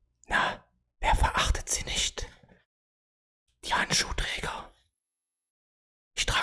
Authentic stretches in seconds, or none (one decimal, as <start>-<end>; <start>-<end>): 0.0-4.3; 5.5-6.4